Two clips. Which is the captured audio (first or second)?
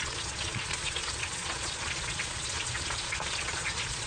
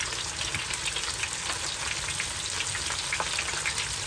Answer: second